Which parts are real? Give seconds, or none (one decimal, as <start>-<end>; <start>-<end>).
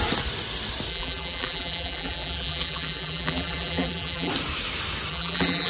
0.0-0.9; 4.3-5.1